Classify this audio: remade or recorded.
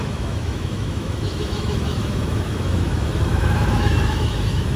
remade